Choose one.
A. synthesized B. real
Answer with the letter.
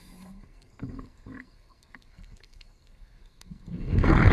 A